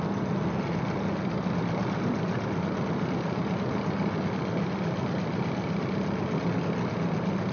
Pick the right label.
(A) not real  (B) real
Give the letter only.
B